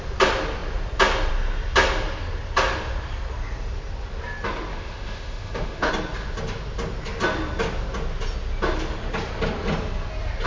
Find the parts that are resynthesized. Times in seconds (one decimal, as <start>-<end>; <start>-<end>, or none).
4.7-5.9